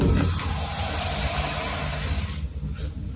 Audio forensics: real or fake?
real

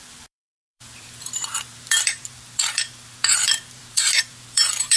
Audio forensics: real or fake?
fake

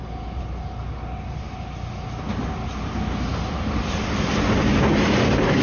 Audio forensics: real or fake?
real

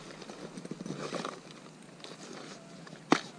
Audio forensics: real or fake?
real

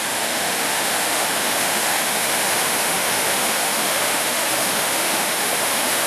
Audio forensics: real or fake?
fake